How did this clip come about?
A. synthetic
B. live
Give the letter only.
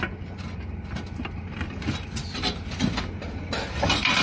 B